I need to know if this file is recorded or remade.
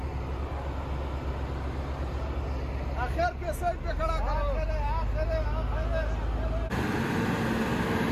recorded